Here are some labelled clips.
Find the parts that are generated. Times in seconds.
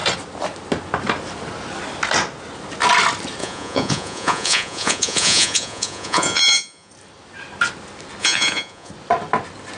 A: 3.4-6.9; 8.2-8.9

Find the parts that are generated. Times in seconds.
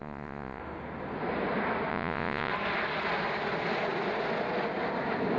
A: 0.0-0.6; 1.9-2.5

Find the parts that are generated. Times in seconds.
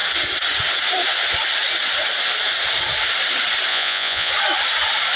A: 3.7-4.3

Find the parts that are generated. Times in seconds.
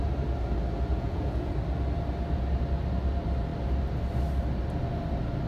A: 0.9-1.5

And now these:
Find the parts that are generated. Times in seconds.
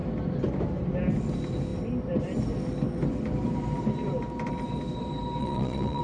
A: 5.4-6.0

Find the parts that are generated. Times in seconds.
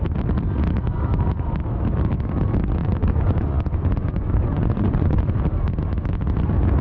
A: 2.8-5.4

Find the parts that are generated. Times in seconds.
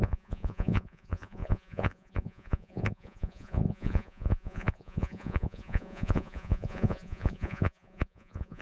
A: 0.0-8.6